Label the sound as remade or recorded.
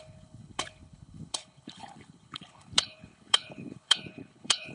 remade